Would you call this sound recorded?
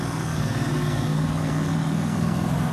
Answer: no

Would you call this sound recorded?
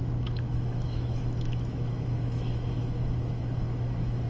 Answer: no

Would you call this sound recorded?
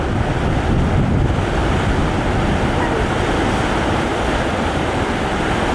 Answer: yes